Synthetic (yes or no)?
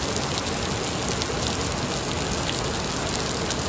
no